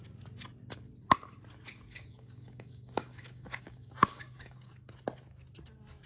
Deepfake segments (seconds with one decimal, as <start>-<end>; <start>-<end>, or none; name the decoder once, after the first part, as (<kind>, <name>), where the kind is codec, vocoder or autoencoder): 1.7-4.7 (codec, DAC)